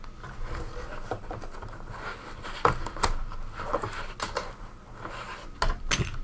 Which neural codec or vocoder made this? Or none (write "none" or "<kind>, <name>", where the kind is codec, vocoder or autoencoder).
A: none